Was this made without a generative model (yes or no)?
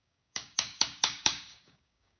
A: no